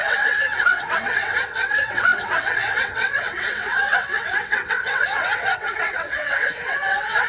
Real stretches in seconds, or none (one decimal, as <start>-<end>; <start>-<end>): none